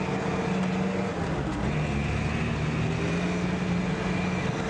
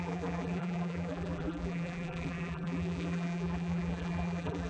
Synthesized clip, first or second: second